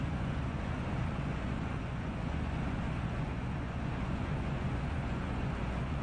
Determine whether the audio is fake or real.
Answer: fake